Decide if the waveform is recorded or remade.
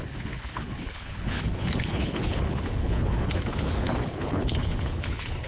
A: remade